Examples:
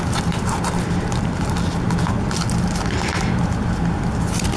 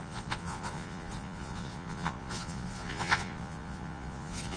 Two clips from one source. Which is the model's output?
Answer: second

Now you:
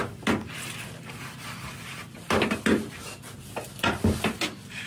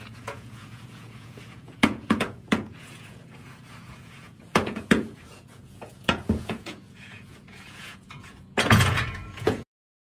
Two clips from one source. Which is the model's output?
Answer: second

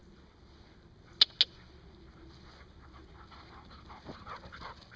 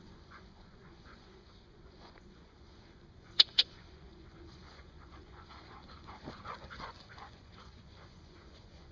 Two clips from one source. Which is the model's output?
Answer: second